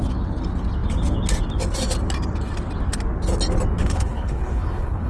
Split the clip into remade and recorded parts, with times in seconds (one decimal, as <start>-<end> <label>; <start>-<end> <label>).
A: 0.0-3.8 recorded; 3.8-5.1 remade